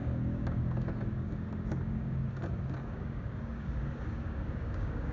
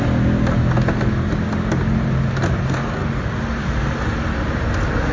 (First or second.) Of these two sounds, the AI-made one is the first